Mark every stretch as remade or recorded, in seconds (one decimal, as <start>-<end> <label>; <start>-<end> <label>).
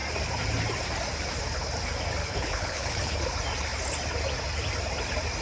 0.0-2.2 recorded; 2.2-3.2 remade; 3.2-5.4 recorded